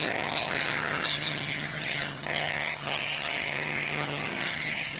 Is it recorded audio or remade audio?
remade